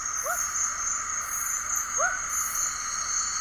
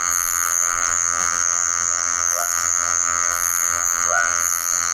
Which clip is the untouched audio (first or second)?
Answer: first